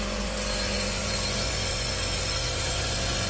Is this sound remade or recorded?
remade